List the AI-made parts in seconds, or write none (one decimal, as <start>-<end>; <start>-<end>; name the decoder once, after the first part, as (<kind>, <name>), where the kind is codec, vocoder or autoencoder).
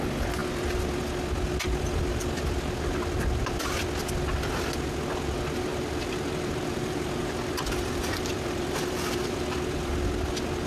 5.7-9.9 (vocoder, BigVGAN v2)